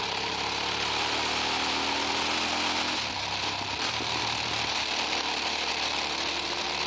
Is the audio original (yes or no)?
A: yes